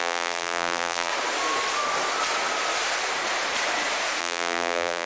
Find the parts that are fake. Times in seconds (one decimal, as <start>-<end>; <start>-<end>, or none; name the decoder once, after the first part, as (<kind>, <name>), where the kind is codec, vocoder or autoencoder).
0.0-1.1 (vocoder, BigVGAN v2); 4.2-5.1